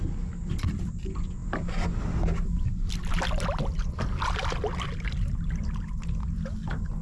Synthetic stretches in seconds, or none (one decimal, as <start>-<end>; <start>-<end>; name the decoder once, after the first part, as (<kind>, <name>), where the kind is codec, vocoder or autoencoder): none